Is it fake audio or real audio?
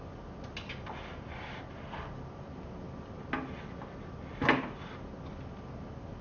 real